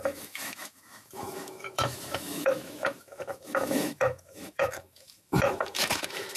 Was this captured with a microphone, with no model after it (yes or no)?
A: no